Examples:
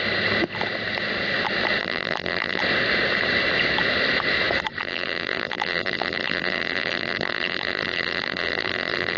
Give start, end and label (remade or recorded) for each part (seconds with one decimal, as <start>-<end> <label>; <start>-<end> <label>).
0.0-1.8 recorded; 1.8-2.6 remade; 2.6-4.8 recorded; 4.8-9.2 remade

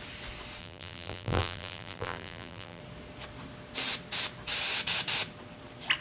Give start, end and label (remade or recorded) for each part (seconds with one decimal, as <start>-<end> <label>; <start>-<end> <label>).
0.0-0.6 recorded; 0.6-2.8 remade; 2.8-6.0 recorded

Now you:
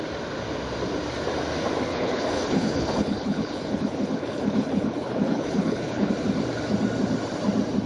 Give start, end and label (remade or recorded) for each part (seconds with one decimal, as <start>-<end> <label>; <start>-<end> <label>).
0.0-1.9 recorded; 1.9-6.1 remade; 6.1-7.9 recorded

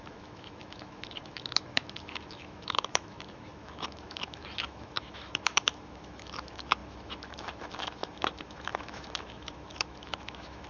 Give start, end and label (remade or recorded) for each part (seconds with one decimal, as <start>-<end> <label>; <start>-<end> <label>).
0.0-10.7 remade

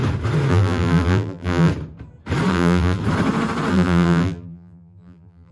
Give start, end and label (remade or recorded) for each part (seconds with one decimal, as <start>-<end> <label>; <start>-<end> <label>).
0.0-0.5 recorded; 0.5-1.7 remade; 1.7-2.5 recorded; 2.5-3.0 remade; 3.0-3.7 recorded; 3.7-5.5 remade

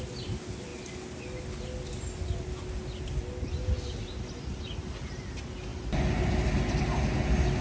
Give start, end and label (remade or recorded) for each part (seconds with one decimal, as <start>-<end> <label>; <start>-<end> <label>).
0.0-7.6 recorded

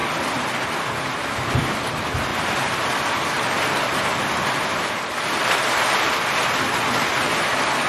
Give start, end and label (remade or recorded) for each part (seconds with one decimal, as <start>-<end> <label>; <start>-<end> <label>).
0.0-0.8 remade; 0.8-2.3 recorded; 2.3-6.2 remade; 6.2-7.9 recorded